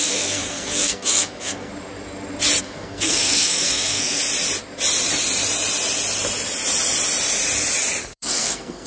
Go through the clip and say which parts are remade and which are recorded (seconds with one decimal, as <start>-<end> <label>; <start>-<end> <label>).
0.0-1.7 remade; 1.7-2.6 recorded; 2.6-4.2 remade; 4.2-8.0 recorded; 8.0-8.9 remade